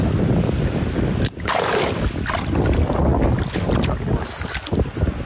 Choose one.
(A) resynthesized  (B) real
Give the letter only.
B